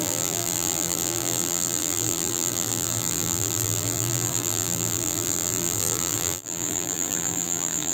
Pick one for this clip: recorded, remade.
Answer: remade